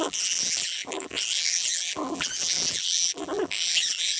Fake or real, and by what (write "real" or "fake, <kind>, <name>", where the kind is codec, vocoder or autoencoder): fake, vocoder, BigVGAN v2